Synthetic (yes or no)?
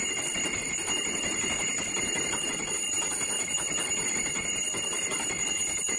no